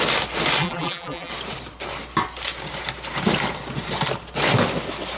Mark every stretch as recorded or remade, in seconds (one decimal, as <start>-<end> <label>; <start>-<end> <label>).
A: 0.0-0.6 recorded; 0.6-1.3 remade; 1.3-5.2 recorded